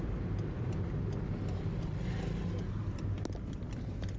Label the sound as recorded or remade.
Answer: recorded